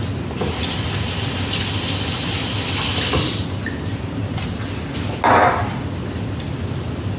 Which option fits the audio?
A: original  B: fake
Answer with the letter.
A